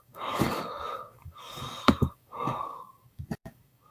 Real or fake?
fake